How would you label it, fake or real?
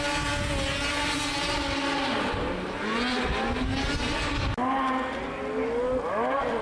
real